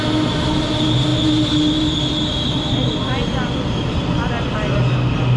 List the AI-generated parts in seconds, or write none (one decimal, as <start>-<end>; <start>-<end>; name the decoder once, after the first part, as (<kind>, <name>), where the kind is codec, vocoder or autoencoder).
none